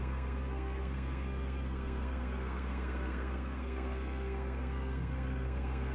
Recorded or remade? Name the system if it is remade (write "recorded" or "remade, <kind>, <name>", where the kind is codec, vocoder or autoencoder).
remade, codec, SNAC